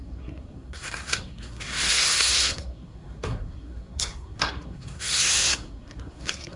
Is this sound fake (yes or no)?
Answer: yes